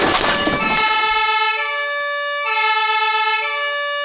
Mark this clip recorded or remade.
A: recorded